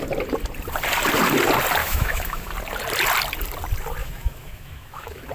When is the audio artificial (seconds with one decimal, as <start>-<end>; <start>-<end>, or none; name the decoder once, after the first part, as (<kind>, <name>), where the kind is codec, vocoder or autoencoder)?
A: 1.8-2.5 (autoencoder, DAC-VAE); 4.0-5.3